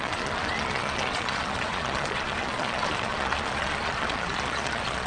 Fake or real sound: fake